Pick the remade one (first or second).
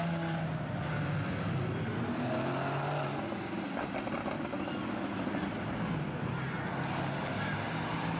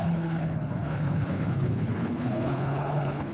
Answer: second